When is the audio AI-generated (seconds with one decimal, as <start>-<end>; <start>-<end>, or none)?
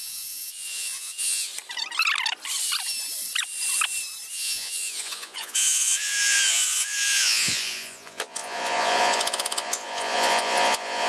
0.0-1.5; 4.3-11.1